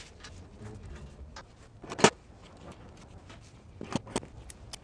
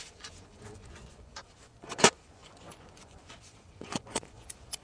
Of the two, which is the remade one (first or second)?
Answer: second